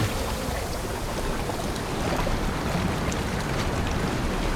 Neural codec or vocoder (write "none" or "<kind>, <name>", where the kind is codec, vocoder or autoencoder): none